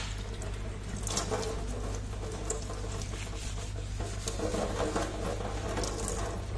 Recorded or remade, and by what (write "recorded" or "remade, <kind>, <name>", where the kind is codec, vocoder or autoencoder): recorded